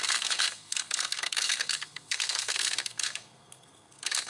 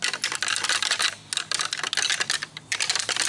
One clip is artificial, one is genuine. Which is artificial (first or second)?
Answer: first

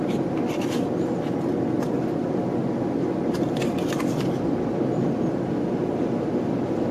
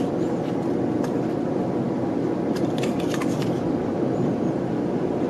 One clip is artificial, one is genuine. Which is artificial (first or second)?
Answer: second